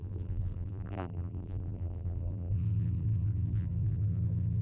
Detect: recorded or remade remade